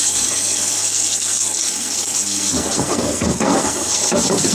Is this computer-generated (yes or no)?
yes